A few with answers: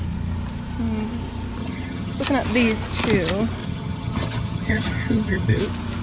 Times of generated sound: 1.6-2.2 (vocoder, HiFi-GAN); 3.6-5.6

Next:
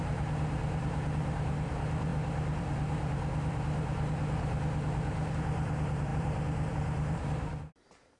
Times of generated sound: 0.0-8.2 (vocoder, BigVGAN v2)